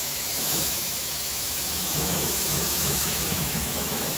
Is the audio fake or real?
fake